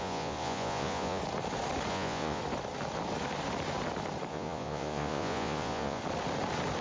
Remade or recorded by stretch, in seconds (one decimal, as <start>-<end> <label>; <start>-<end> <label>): 0.0-1.2 remade; 1.2-1.9 recorded; 1.9-2.4 remade; 2.4-4.3 recorded; 4.3-6.0 remade; 6.0-6.8 recorded